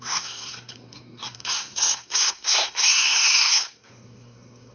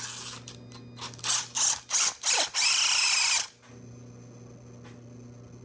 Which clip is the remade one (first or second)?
first